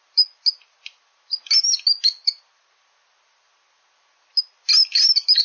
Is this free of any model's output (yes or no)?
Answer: yes